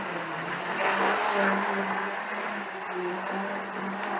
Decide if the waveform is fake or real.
real